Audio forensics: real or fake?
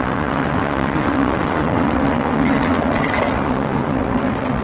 fake